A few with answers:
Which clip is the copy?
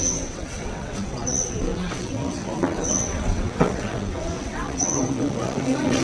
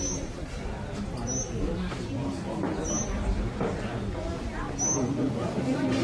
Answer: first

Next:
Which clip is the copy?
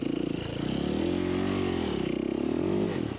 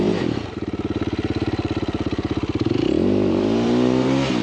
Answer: second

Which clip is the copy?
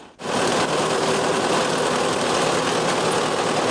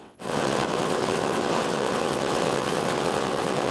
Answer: second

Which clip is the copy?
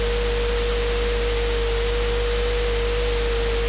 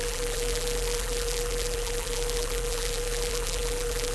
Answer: second